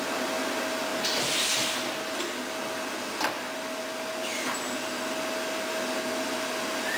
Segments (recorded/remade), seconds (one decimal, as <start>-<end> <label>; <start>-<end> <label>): 0.0-7.0 recorded